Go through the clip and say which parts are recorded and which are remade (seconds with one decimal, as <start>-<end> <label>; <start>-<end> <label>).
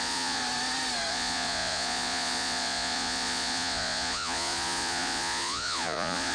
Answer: 0.0-0.4 remade; 0.4-1.1 recorded; 1.1-6.3 remade